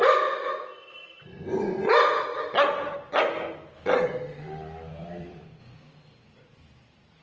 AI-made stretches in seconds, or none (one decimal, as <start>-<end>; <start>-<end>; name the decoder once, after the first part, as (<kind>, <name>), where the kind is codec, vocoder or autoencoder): 4.9-5.5 (vocoder, BigVGAN v2)